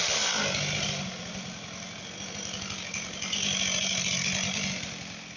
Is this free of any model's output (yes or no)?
yes